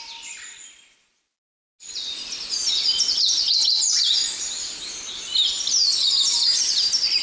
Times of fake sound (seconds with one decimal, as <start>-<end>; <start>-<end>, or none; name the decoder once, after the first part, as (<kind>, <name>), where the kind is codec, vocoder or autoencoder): none